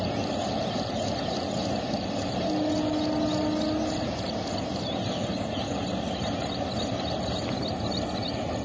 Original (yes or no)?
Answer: yes